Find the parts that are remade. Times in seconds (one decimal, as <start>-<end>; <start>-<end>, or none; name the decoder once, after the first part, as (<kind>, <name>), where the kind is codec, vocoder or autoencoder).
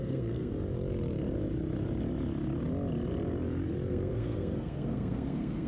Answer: 0.0-0.5 (codec, SNAC); 3.9-5.7